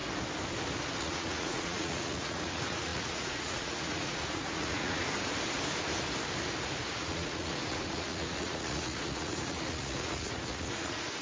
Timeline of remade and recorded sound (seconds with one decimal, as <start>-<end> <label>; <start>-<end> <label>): 0.0-1.0 recorded; 1.0-5.0 remade; 5.0-6.9 recorded; 6.9-11.2 remade